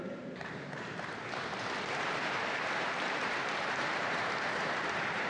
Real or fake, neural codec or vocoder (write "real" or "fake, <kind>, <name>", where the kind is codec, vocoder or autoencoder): fake, vocoder, BigVGAN v2